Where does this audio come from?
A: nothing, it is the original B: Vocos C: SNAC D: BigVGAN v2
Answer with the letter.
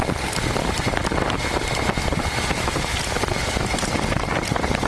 D